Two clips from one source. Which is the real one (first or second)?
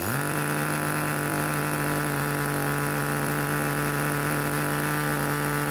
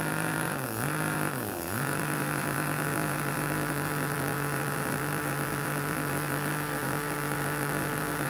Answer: first